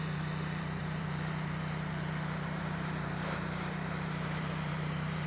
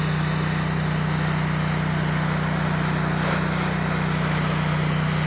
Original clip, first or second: second